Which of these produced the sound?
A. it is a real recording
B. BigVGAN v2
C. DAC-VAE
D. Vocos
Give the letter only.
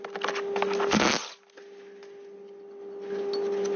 A